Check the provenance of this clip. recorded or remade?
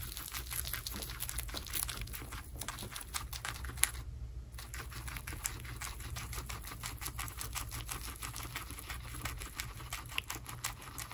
recorded